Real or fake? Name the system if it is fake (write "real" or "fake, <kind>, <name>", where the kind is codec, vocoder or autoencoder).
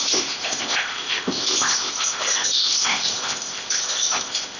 fake, codec, ZipCodec